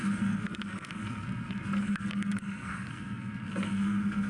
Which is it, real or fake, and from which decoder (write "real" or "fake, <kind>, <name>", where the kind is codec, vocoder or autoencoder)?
fake, codec, SNAC